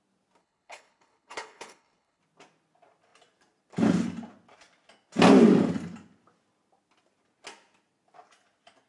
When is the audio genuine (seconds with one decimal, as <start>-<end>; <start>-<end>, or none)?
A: 0.0-0.4; 2.2-8.9